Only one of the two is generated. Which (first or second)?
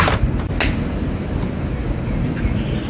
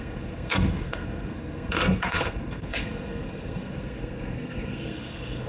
second